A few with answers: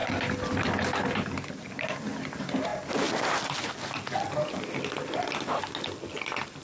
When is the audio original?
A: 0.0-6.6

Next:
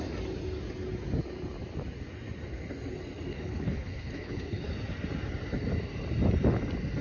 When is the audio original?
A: 0.0-3.3; 4.6-7.0

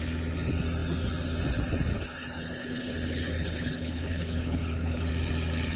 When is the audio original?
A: 0.0-1.9; 5.1-5.8

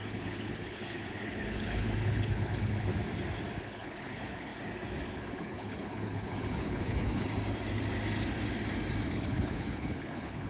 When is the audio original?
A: 2.9-3.6; 4.5-5.1; 7.3-9.1

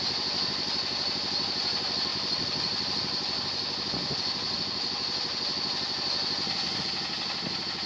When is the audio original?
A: 0.0-7.9

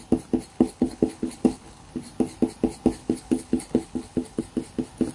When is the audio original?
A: 0.0-0.5; 1.9-3.0; 4.4-5.1

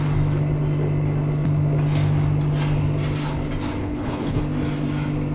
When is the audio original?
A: 0.0-3.8; 4.4-5.3

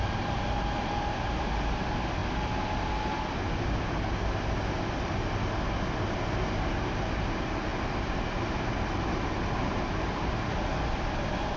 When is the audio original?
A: 0.0-11.6